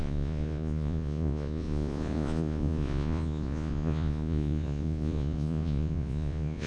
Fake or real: fake